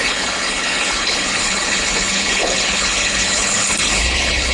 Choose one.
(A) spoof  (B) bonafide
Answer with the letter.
A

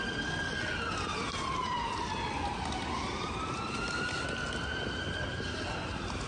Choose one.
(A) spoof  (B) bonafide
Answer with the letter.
B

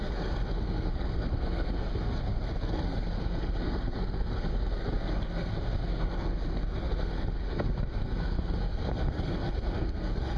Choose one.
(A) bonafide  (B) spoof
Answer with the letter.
B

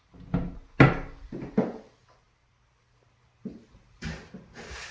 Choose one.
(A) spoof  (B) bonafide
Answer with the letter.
B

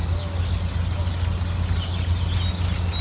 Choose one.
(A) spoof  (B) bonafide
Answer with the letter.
B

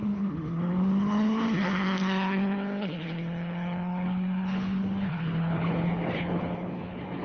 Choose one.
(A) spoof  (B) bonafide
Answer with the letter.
A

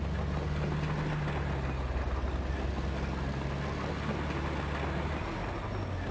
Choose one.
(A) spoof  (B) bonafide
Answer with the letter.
B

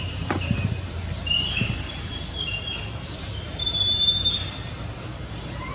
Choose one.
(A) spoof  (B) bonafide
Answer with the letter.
A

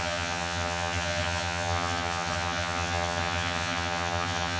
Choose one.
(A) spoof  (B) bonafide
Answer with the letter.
A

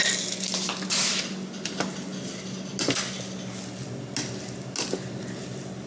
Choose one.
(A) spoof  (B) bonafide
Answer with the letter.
B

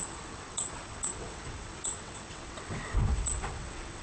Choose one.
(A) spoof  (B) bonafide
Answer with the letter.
A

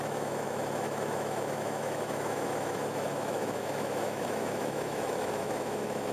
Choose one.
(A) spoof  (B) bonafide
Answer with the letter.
A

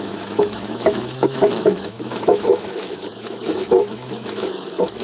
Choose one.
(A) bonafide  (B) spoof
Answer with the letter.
B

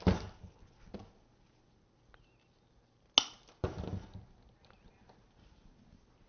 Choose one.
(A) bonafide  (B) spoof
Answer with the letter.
A